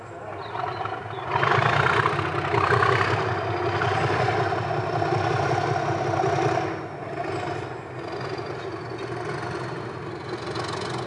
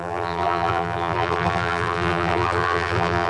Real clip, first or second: first